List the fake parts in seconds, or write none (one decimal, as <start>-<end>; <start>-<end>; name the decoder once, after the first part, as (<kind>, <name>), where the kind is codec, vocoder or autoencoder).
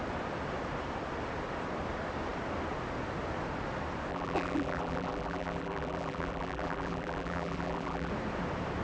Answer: 4.1-8.1 (vocoder, BigVGAN v2)